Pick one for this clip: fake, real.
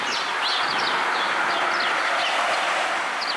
real